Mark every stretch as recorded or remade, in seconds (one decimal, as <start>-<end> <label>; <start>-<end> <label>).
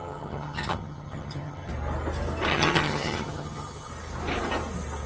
0.0-1.7 remade; 1.7-2.5 recorded; 2.5-3.9 remade; 3.9-5.1 recorded